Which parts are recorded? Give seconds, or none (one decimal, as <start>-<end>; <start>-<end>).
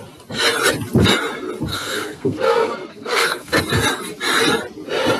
0.0-1.7; 3.6-5.2